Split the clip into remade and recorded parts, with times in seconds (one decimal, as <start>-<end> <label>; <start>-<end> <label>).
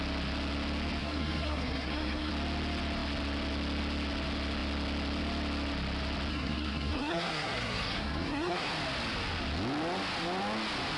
0.0-1.0 recorded; 1.0-2.3 remade; 2.3-6.3 recorded; 6.3-8.7 remade; 8.7-11.0 recorded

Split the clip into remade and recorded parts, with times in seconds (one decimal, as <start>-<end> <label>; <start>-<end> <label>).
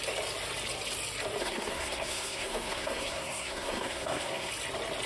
0.0-1.4 recorded; 1.4-4.5 remade; 4.5-5.1 recorded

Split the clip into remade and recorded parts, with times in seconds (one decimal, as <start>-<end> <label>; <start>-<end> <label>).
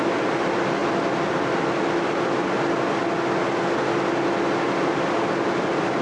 0.0-6.0 recorded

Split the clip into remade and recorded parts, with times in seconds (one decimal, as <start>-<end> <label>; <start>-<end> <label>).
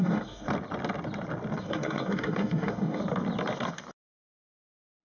0.0-0.5 remade; 0.5-1.6 recorded; 1.6-3.0 remade; 3.0-5.0 recorded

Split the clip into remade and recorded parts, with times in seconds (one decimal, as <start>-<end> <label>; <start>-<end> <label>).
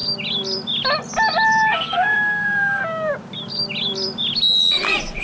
0.0-1.7 recorded; 1.7-2.8 remade; 2.8-5.2 recorded